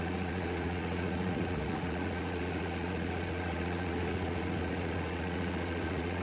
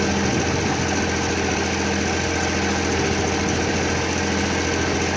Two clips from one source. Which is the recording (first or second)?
second